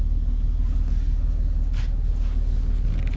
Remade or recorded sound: recorded